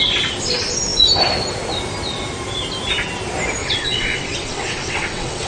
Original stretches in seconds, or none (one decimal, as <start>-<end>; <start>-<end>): 0.0-3.6